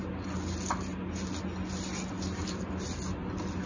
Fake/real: real